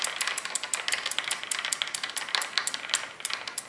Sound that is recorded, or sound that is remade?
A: recorded